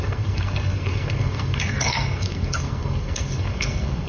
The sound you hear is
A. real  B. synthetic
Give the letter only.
B